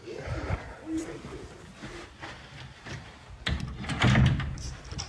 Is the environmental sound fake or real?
fake